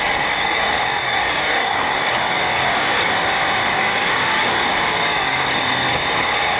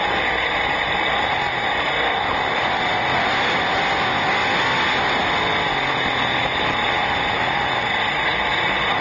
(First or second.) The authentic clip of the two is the second